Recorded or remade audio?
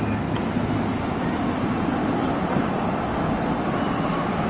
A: remade